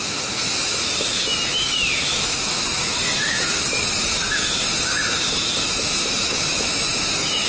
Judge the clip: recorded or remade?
remade